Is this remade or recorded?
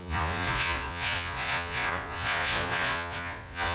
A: remade